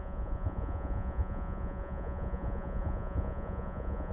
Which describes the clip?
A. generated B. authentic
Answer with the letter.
A